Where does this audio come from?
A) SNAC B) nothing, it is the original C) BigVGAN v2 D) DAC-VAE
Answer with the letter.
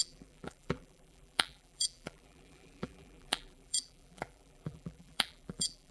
C